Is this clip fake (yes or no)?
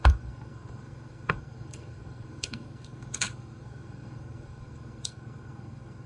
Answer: yes